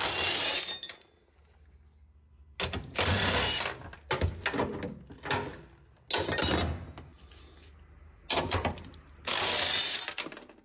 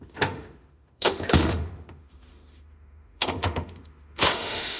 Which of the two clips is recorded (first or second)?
first